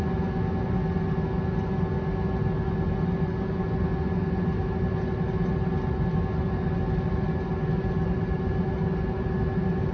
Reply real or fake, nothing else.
real